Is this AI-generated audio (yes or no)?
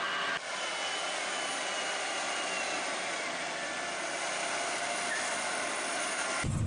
no